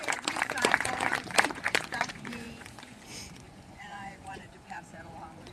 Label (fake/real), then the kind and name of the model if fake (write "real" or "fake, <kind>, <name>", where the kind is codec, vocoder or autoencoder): fake, vocoder, Vocos